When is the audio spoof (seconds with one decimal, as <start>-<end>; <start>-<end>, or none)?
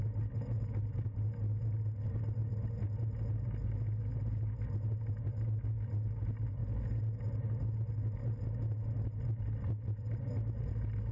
none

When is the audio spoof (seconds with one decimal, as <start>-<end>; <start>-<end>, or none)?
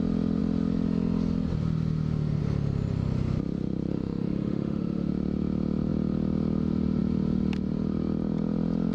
3.9-5.1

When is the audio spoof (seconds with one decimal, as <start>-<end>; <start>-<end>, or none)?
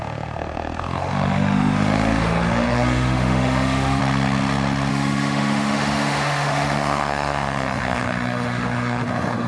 0.0-4.0; 4.9-9.5